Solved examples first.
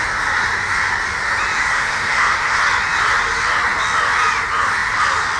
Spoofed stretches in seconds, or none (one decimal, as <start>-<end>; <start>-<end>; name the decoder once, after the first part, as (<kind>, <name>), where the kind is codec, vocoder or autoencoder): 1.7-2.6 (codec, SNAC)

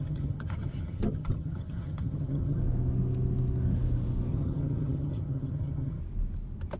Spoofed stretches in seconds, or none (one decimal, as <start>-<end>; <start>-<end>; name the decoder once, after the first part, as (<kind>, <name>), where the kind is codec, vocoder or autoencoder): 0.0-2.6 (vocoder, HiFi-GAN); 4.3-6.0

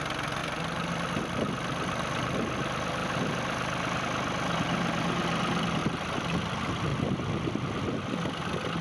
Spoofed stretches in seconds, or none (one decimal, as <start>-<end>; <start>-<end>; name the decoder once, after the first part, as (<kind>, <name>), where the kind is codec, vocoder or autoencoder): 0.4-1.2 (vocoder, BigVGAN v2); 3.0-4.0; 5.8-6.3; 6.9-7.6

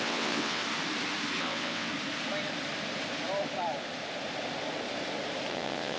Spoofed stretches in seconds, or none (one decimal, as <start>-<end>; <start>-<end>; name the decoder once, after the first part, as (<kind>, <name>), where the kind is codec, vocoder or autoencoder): 0.0-0.6 (vocoder, WaveNeXt); 1.4-1.9; 5.5-6.0

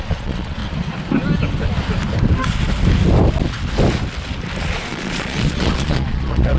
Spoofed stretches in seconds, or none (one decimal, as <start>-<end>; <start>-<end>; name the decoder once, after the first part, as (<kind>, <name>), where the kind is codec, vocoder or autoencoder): 0.0-0.6 (vocoder, Vocos); 4.6-6.6

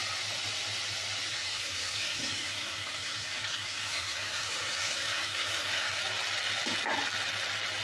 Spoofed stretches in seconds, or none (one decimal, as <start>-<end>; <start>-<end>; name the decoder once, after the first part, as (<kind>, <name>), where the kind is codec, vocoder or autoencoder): 1.3-6.0 (codec, SNAC)